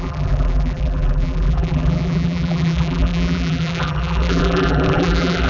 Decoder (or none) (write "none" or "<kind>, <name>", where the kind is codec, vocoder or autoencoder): vocoder, BigVGAN v2